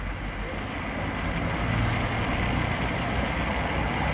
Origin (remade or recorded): recorded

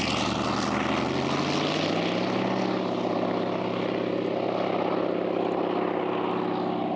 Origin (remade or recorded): recorded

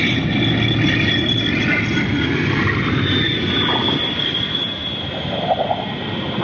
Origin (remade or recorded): recorded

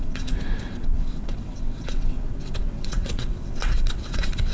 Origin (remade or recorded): remade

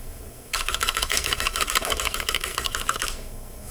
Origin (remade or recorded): remade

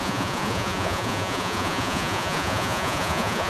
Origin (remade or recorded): remade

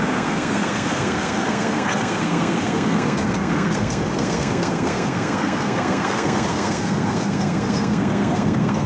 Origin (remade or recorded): remade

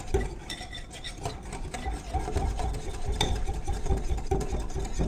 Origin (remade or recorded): recorded